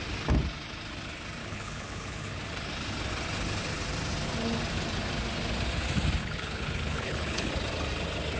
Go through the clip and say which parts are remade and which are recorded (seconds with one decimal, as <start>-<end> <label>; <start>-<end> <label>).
0.0-1.4 recorded; 1.4-2.4 remade; 2.4-6.2 recorded; 6.2-7.5 remade; 7.5-8.4 recorded